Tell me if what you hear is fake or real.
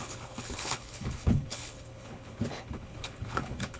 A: fake